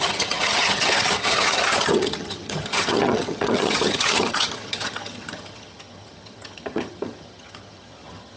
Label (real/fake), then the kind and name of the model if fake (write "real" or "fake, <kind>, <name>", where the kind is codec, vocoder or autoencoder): fake, vocoder, HiFi-GAN